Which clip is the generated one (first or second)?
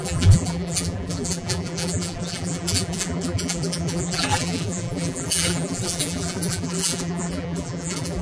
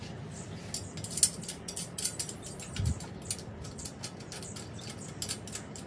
first